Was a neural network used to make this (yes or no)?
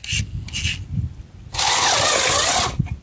no